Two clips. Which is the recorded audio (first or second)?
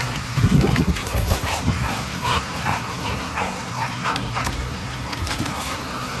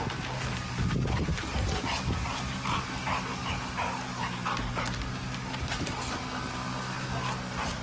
second